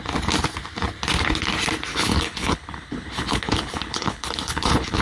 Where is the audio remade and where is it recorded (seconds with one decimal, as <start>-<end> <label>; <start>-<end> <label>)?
0.0-1.9 recorded; 1.9-5.0 remade